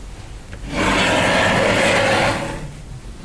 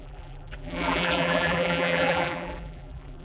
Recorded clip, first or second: first